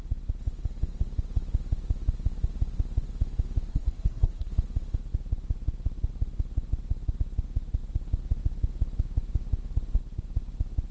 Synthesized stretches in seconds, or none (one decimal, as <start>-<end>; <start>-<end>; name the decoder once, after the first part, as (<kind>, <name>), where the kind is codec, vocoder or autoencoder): 3.7-4.5 (codec, SNAC)